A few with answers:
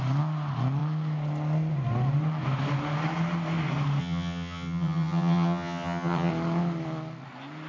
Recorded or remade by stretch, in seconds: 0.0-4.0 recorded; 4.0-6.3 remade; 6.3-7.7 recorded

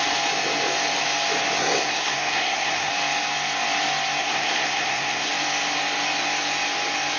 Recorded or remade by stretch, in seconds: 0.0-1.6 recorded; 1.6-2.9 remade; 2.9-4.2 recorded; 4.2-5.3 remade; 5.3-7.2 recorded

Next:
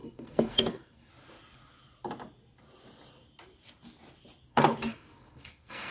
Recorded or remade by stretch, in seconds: 0.0-1.1 remade; 1.1-4.5 recorded; 4.5-5.9 remade

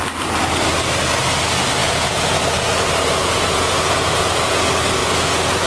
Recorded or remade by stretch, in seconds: 0.0-1.8 recorded; 1.8-2.4 remade; 2.4-3.2 recorded; 3.2-4.6 remade; 4.6-5.0 recorded; 5.0-5.7 remade

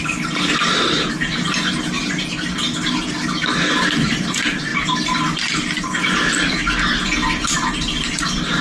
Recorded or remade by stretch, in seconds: 0.0-8.6 remade

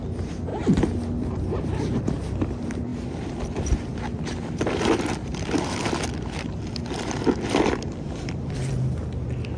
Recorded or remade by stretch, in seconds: 0.0-0.5 recorded; 0.5-2.0 remade; 2.0-2.9 recorded; 2.9-3.4 remade; 3.4-3.9 recorded; 3.9-8.7 remade; 8.7-9.6 recorded